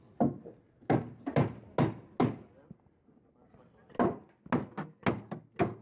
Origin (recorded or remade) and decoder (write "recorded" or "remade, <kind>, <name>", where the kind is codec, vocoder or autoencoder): recorded